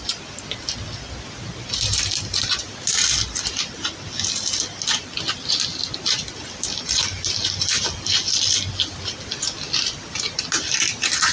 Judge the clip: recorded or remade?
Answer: recorded